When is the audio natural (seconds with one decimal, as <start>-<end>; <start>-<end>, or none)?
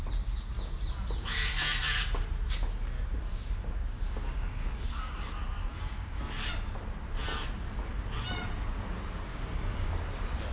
0.0-3.3; 5.2-5.7; 6.2-9.3; 9.9-10.5